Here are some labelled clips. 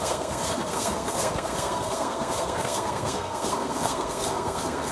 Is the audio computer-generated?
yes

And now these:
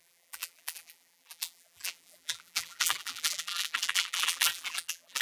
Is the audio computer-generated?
yes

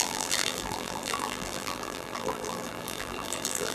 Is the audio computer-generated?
yes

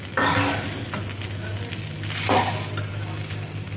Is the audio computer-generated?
no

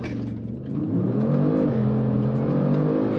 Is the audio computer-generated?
no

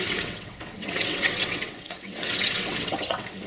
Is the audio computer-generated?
yes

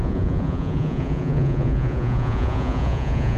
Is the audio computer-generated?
yes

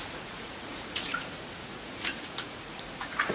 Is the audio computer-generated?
yes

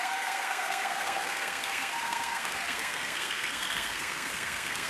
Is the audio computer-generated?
yes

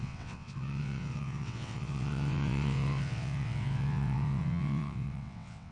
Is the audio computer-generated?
yes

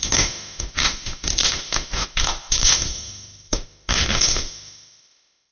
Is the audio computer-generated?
yes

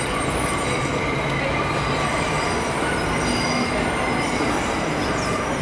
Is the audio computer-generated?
no